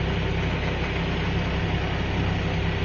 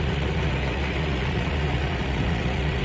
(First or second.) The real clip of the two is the first